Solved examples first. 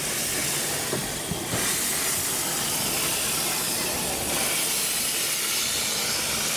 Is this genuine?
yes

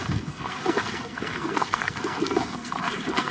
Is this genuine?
no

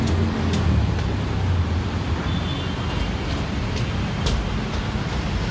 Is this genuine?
yes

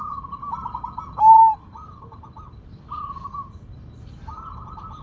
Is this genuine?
yes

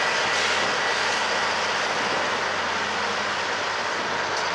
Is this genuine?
yes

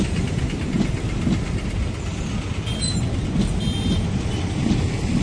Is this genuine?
yes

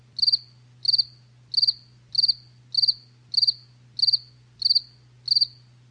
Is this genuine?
yes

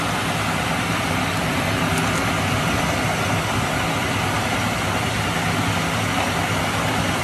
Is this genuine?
yes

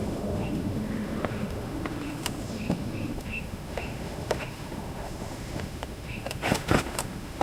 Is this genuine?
no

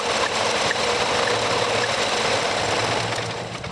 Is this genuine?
yes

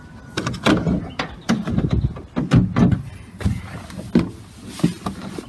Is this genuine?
yes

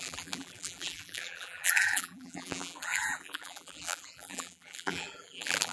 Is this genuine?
no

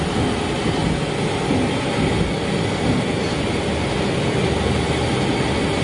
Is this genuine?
yes